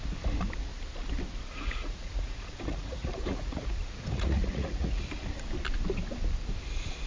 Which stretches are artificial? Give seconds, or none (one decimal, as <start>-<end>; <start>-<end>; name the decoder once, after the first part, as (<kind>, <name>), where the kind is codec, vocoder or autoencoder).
1.5-5.0 (vocoder, Vocos)